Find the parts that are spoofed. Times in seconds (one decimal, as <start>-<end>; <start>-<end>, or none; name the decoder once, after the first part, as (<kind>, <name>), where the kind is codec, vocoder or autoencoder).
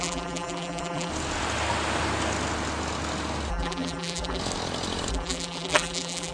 0.0-1.1 (vocoder, BigVGAN v2); 3.5-4.4; 5.1-6.3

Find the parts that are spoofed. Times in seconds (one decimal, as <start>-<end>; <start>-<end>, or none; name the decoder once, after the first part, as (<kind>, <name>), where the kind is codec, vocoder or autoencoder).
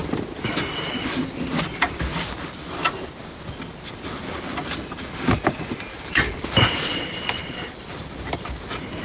5.9-8.4 (vocoder, BigVGAN v2)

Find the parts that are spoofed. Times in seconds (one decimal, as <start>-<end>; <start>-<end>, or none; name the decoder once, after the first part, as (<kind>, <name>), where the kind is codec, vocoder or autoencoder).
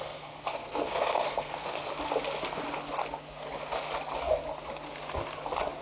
0.0-1.9 (codec, SNAC)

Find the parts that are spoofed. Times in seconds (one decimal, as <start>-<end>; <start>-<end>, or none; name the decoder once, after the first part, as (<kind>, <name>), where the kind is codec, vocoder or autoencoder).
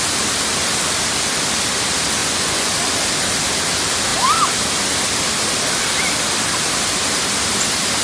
2.2-2.7 (vocoder, Vocos)